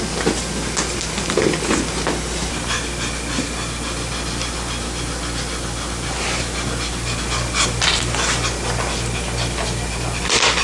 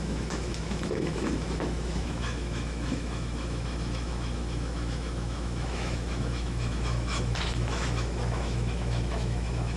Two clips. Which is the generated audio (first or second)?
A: second